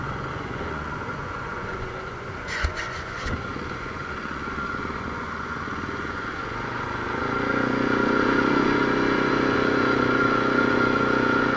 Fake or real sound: fake